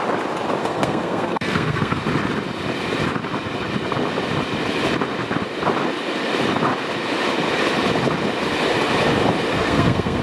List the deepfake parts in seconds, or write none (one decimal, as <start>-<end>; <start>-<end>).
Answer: 0.6-2.0; 9.5-10.2